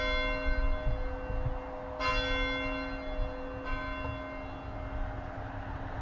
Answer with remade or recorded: recorded